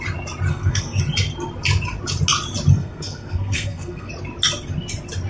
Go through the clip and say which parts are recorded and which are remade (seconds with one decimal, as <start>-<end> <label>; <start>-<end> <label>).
0.0-0.5 recorded; 0.5-1.0 remade; 1.0-2.7 recorded; 2.7-4.1 remade; 4.1-5.3 recorded